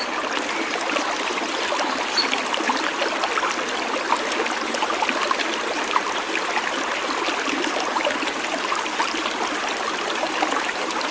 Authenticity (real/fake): real